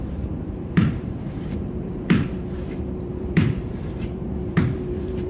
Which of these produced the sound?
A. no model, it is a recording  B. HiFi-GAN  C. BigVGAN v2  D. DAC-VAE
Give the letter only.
C